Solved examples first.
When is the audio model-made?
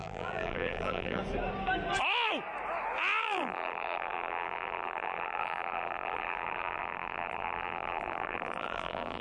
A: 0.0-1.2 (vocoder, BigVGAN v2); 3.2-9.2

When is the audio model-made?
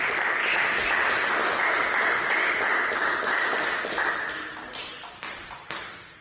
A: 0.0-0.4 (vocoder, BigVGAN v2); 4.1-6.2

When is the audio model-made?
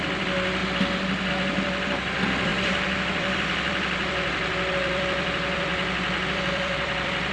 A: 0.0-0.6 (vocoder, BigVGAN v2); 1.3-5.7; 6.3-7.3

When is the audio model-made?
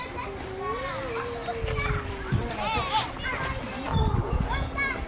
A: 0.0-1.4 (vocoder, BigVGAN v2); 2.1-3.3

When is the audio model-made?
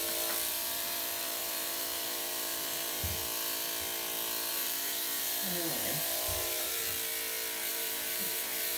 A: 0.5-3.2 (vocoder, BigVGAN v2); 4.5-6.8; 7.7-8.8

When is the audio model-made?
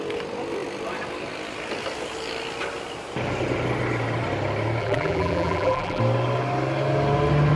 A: 4.8-6.0 (vocoder, BigVGAN v2)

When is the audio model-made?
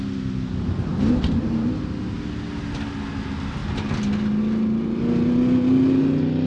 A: 0.9-2.2 (vocoder, BigVGAN v2)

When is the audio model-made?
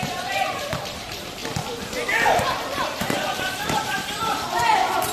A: 0.0-1.4 (vocoder, BigVGAN v2); 3.4-5.1